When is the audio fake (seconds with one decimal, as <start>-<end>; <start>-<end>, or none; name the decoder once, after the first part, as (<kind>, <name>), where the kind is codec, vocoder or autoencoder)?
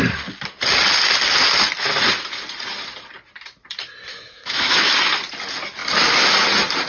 4.1-4.9 (autoencoder, DAC-VAE)